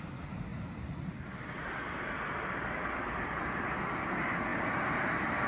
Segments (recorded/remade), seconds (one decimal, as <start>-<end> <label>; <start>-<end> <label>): 0.0-5.5 recorded